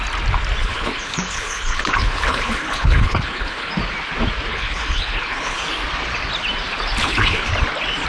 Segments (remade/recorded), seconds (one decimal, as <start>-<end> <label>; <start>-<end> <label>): 0.0-0.6 recorded; 0.6-3.7 remade; 3.7-4.5 recorded; 4.5-5.6 remade; 5.6-7.0 recorded; 7.0-7.5 remade; 7.5-8.1 recorded